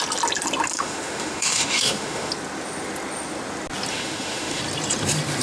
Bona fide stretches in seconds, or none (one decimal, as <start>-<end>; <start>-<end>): 0.0-0.7; 2.3-3.9; 4.6-5.4